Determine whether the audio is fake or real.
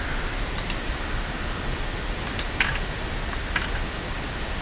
real